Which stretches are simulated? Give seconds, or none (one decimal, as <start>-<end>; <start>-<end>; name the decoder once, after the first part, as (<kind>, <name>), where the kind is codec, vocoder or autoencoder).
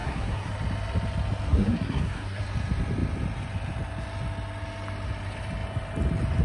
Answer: 0.0-0.5 (codec, SNAC); 1.5-2.4